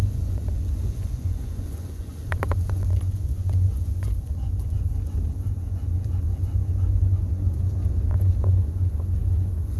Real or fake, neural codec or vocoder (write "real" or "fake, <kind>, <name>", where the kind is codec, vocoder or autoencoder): fake, vocoder, Vocos